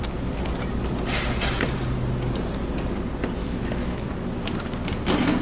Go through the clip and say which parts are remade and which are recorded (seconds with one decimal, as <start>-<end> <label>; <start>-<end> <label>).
0.0-3.4 recorded; 3.4-4.1 remade; 4.1-5.4 recorded

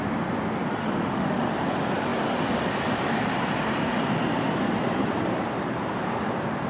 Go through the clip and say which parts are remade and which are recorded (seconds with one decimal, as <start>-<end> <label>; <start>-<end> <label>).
0.0-0.8 recorded; 0.8-1.5 remade; 1.5-6.7 recorded